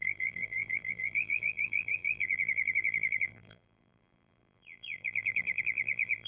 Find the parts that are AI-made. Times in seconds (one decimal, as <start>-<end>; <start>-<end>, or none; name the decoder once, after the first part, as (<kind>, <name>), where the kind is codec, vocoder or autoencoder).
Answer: 0.0-6.3 (vocoder, BigVGAN v2)